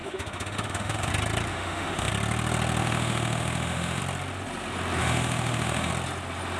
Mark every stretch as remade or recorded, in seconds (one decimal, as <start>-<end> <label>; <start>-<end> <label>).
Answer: 0.0-1.1 remade; 1.1-1.5 recorded; 1.5-2.1 remade; 2.1-2.8 recorded; 2.8-4.0 remade; 4.0-5.0 recorded; 5.0-5.9 remade; 5.9-6.6 recorded